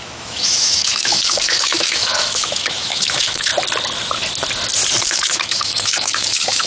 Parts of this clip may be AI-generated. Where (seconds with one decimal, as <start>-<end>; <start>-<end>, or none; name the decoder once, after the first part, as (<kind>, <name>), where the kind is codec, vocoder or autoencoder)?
0.0-3.5 (autoencoder, DAC-VAE); 5.0-6.7